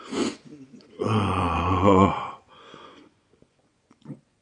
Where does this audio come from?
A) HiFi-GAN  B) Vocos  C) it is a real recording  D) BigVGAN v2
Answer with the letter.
B